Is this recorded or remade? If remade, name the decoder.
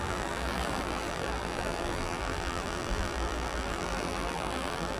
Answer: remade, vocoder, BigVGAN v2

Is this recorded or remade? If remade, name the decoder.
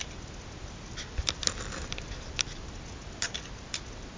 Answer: recorded